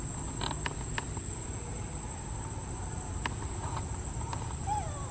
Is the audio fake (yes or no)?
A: no